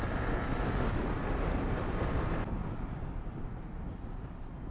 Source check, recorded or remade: recorded